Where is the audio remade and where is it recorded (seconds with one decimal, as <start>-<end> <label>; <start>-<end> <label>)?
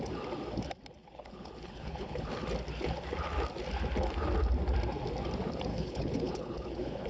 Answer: 0.0-1.0 recorded; 1.0-2.3 remade; 2.3-5.7 recorded; 5.7-7.1 remade